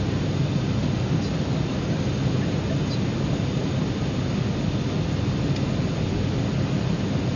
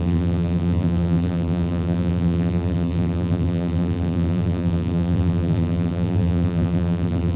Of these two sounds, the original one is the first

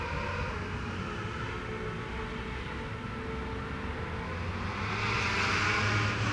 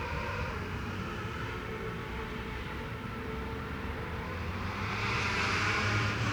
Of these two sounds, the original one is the first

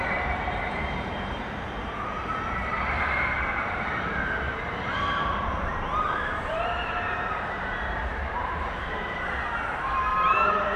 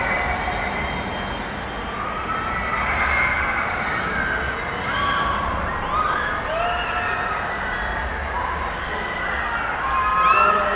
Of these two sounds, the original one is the second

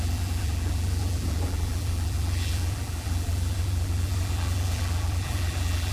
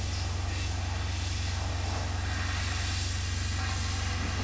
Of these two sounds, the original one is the second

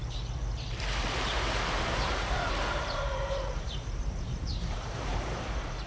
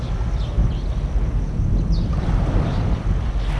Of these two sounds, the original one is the second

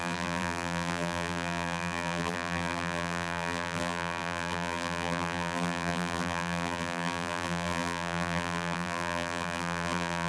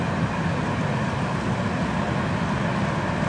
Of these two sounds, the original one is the second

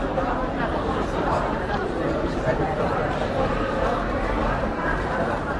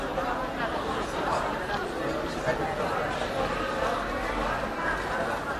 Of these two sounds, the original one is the second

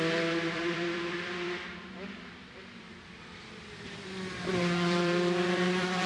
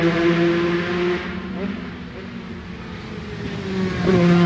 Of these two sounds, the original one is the second